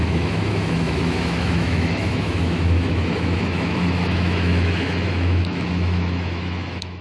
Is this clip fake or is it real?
fake